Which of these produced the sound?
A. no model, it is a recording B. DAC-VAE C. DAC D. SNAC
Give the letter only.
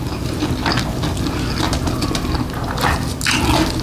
A